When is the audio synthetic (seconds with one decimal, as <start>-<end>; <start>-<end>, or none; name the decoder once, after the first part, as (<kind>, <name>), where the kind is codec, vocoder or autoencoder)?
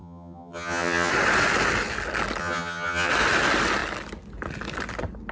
0.0-1.1 (vocoder, HiFi-GAN); 2.4-3.1